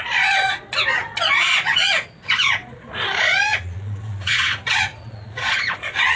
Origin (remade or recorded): remade